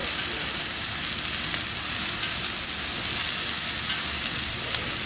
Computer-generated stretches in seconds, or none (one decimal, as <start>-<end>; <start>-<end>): none